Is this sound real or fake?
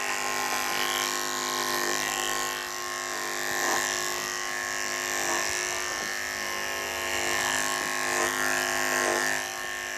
real